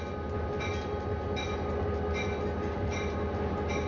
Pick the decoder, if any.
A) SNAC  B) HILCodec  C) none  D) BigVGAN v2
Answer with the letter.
C